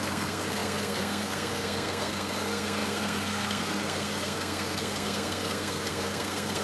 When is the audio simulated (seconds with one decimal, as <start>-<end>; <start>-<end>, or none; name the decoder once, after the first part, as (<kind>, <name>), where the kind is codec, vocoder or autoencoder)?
0.0-6.6 (codec, SNAC)